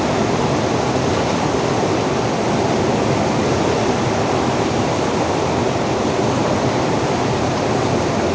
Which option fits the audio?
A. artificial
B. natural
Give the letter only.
A